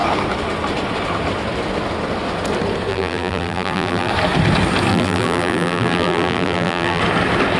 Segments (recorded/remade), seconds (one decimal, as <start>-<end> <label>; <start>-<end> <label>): 0.0-2.9 recorded; 2.9-4.1 remade; 4.1-4.9 recorded; 4.9-7.0 remade; 7.0-7.6 recorded